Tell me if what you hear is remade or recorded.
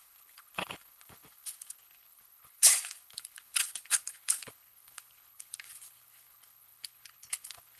remade